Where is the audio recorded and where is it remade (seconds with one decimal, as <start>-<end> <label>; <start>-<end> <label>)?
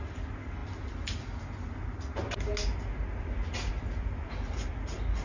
0.0-5.2 recorded